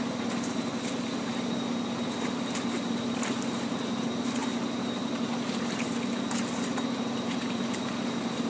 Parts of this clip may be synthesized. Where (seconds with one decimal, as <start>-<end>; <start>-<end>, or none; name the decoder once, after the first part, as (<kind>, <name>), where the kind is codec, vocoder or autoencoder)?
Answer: none